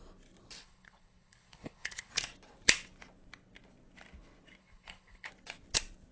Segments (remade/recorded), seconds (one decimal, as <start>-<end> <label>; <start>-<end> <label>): 0.0-0.6 recorded; 0.6-2.1 remade; 2.1-4.6 recorded; 4.6-5.3 remade; 5.3-6.1 recorded